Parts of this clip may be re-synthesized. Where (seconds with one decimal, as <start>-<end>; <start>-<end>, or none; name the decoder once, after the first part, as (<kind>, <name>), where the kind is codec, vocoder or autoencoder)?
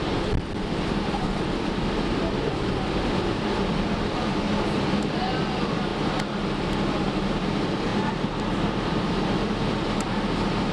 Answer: 0.0-7.9 (vocoder, BigVGAN v2); 8.4-10.7